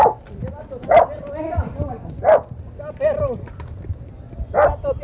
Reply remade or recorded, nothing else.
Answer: recorded